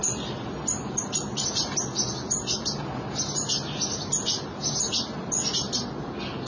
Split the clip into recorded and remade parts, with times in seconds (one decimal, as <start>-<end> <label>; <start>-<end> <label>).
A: 0.0-6.5 recorded